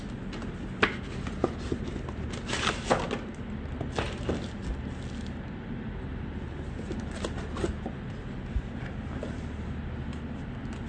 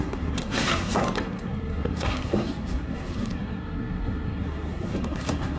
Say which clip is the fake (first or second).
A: second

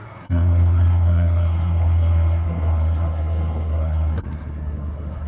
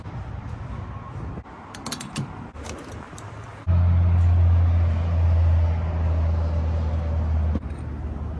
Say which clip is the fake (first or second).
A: first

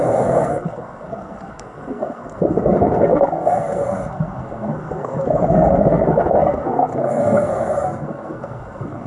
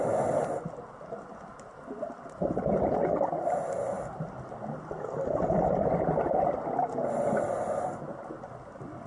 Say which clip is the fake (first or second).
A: first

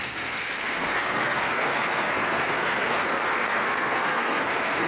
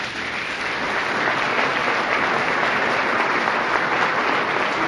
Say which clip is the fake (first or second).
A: first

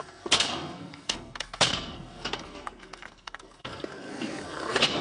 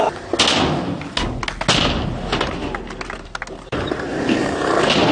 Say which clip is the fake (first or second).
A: first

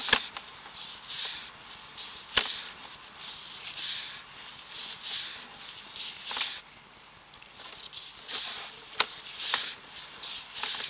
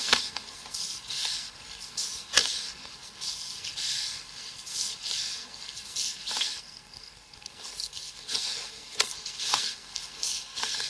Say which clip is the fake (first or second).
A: second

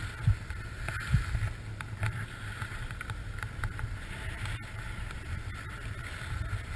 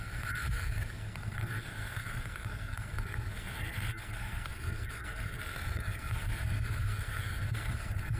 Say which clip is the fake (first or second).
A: second